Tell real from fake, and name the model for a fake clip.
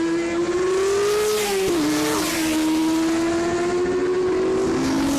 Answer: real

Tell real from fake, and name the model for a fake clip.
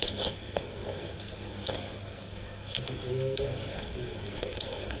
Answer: fake, codec, SNAC